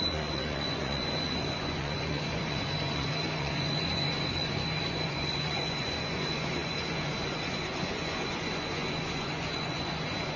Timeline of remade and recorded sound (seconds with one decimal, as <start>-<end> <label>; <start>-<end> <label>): 0.0-10.4 remade